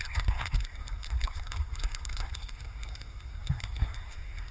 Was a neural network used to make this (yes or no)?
yes